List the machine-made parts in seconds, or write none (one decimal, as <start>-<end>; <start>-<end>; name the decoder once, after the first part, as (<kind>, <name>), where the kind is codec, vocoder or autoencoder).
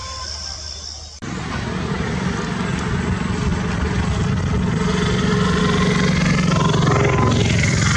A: none